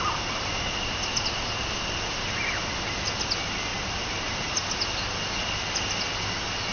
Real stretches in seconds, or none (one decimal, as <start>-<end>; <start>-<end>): 0.0-3.7; 4.5-6.7